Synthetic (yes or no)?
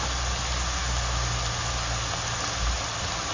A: no